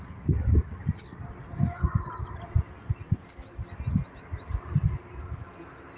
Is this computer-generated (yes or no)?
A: no